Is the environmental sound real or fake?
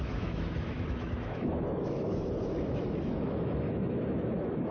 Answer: fake